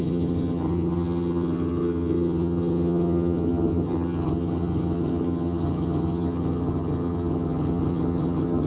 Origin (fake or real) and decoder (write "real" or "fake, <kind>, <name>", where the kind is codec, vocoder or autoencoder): fake, vocoder, HiFi-GAN